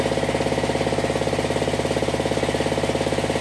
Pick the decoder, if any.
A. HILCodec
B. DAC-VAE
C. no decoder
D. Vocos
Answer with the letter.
C